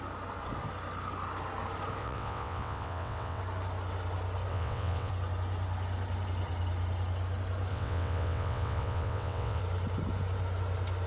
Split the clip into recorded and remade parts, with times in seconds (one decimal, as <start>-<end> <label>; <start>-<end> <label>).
0.0-2.0 recorded; 2.0-3.4 remade; 3.4-4.5 recorded; 4.5-5.1 remade; 5.1-7.7 recorded; 7.7-9.6 remade; 9.6-11.1 recorded